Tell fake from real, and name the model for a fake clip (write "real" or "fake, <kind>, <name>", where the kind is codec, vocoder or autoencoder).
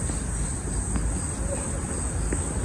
real